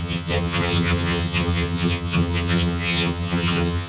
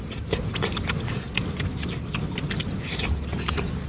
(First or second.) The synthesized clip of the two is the first